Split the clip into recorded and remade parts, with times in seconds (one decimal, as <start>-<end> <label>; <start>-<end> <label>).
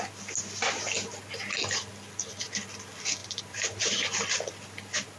0.0-3.2 recorded; 3.2-3.9 remade; 3.9-5.2 recorded